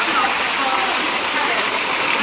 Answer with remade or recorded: recorded